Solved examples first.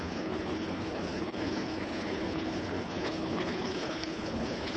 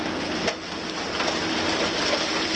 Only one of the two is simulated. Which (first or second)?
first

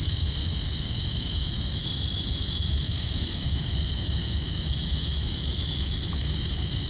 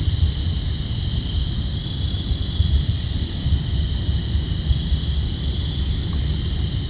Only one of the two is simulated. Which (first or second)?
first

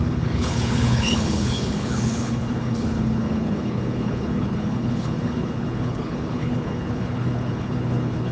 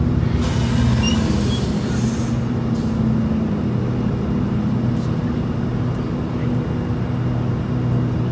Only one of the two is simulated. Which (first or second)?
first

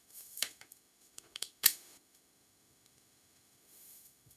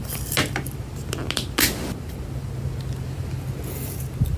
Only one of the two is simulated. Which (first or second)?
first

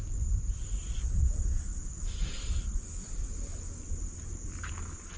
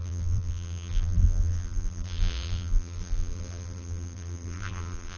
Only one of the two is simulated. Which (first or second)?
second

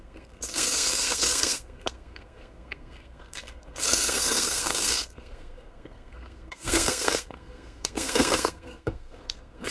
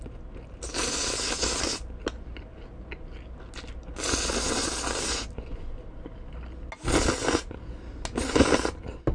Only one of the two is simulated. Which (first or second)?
first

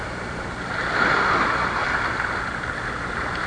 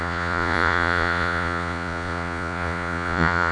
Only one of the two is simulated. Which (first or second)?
second